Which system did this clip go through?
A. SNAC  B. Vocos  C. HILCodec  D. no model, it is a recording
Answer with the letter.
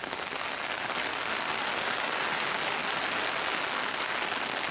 D